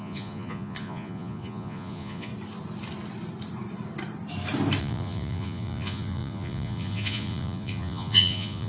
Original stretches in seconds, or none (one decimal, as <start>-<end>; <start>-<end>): 2.3-4.8